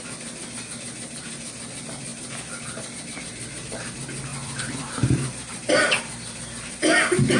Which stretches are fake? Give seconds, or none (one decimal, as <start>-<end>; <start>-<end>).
4.3-5.7